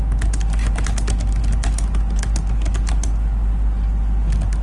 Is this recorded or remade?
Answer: recorded